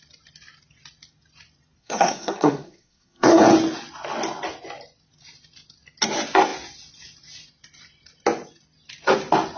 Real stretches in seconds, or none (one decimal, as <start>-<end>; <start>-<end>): 0.0-1.8; 3.4-9.6